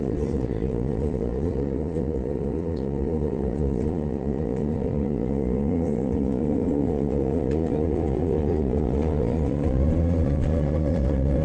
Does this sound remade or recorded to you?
remade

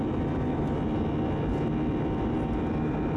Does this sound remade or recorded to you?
recorded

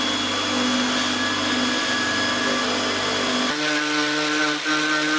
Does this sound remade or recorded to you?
recorded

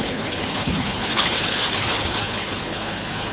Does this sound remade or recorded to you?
remade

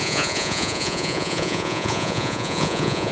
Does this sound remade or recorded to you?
remade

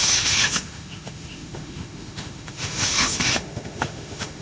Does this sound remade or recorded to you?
remade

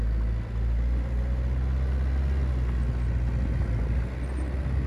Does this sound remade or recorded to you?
recorded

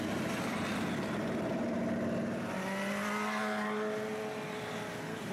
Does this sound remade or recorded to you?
recorded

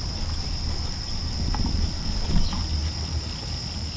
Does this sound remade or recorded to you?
recorded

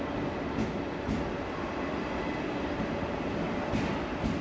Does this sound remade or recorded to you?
recorded